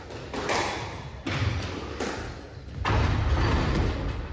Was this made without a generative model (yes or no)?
yes